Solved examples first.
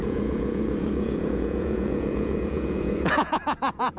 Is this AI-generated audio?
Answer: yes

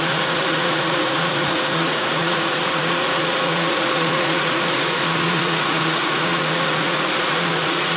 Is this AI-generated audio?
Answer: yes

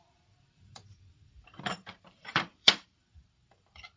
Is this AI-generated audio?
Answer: yes